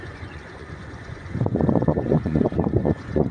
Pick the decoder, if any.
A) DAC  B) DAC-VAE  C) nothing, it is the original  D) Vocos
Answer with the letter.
D